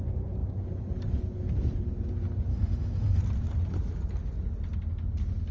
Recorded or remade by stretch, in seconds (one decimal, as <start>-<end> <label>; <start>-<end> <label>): 0.0-2.5 recorded; 2.5-3.2 remade; 3.2-5.5 recorded